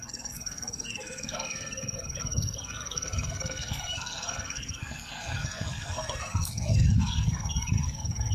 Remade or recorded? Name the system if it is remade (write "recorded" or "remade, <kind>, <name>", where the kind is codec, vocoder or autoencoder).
remade, codec, SNAC